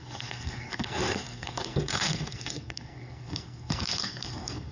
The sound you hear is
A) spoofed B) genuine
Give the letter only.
A